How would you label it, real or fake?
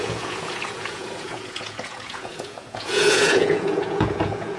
fake